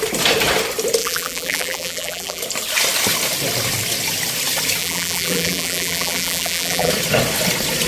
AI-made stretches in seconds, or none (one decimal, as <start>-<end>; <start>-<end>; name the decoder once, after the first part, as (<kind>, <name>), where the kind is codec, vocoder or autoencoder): 1.0-2.4 (vocoder, BigVGAN v2); 4.8-6.9